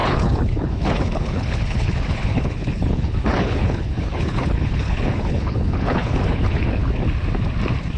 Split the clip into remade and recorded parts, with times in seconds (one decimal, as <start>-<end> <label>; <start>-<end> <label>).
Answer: 0.0-6.8 remade; 6.8-8.0 recorded